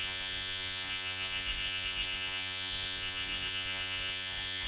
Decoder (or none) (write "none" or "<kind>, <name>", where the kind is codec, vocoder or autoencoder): vocoder, Vocos